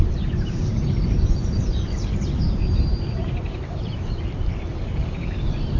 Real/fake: fake